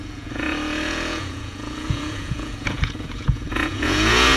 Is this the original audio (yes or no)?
no